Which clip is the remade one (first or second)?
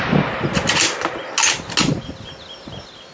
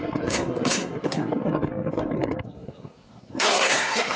second